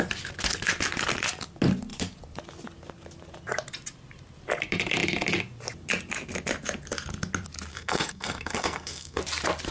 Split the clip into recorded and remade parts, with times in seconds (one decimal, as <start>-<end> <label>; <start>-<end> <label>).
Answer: 0.0-7.7 recorded; 7.7-9.2 remade; 9.2-9.7 recorded